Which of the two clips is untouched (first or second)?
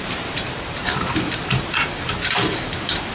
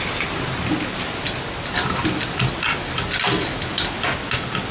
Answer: second